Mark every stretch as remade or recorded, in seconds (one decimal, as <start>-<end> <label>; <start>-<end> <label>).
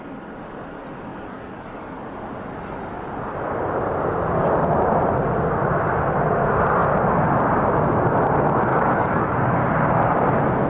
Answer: 0.0-1.1 recorded; 1.1-2.0 remade; 2.0-8.7 recorded; 8.7-9.6 remade; 9.6-10.7 recorded